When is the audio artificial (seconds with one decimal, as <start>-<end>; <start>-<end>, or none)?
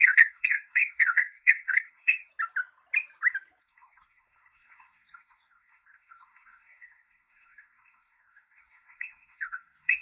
0.0-2.3; 3.6-10.0